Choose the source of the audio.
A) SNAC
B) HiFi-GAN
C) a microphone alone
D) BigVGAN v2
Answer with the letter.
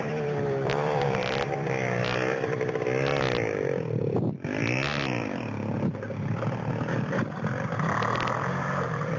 D